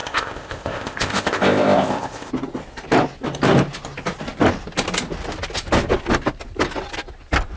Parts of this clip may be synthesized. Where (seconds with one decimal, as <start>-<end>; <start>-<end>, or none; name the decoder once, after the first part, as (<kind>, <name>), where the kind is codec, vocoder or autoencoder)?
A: 0.0-2.3 (codec, ZipCodec)